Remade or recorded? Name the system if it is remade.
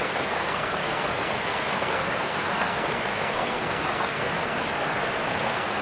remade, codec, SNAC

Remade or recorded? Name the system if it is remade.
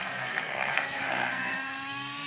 remade, codec, SNAC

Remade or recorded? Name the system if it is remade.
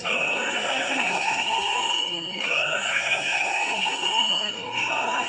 remade, codec, SNAC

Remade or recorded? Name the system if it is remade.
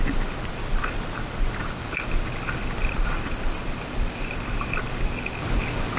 recorded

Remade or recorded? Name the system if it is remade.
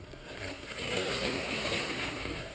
remade, codec, SNAC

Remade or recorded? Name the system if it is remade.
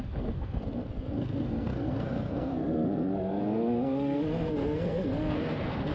remade, codec, SNAC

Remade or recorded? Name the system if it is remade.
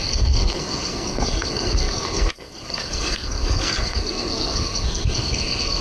remade, codec, SNAC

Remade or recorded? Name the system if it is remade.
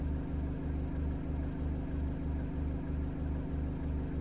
recorded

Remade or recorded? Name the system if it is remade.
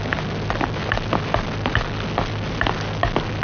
recorded